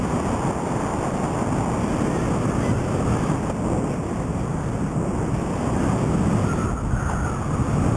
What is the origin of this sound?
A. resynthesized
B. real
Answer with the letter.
B